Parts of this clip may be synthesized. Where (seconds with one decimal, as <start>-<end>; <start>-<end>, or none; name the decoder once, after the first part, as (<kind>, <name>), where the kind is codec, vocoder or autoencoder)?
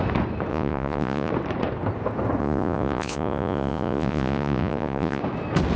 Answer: 0.5-1.3 (vocoder, Vocos); 2.4-5.2